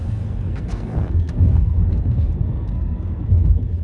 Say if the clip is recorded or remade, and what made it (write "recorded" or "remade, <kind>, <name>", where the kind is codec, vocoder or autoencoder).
remade, codec, SNAC